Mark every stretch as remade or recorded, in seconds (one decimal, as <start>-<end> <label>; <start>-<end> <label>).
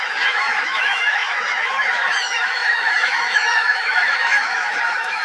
0.0-5.2 remade